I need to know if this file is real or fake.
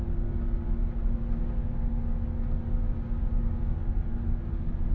real